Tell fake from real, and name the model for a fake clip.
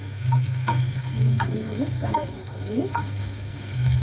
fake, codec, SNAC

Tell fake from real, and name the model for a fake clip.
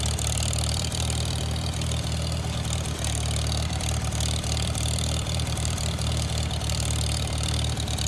fake, vocoder, BigVGAN v2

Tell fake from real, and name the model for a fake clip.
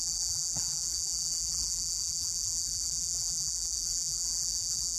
fake, vocoder, BigVGAN v2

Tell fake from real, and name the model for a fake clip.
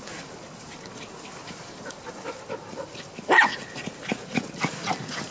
real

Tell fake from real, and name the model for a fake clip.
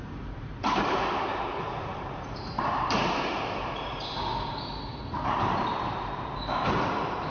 fake, vocoder, BigVGAN v2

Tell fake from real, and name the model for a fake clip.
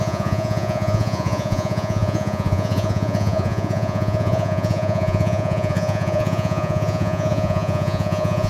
fake, vocoder, Vocos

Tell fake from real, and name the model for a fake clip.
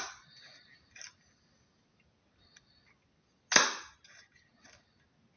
real